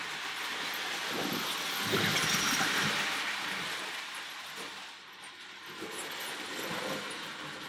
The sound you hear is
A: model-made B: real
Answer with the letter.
B